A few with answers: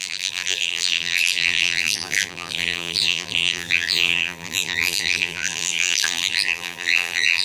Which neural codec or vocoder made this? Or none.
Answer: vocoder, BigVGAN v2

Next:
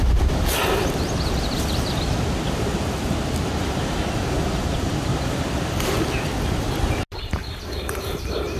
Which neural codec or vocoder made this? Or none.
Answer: none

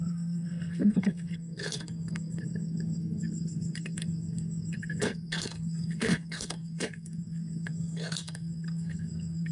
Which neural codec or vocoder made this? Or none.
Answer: codec, SNAC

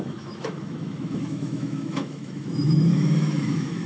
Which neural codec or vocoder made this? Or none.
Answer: autoencoder, DAC-VAE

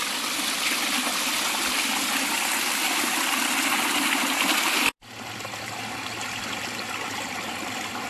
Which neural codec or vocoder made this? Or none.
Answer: none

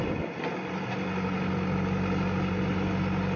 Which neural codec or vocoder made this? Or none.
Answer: none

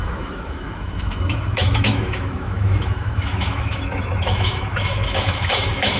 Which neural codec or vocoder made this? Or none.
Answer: autoencoder, DAC-VAE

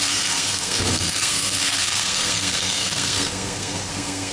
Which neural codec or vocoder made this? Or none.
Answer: codec, SNAC